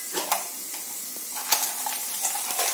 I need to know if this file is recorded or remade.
recorded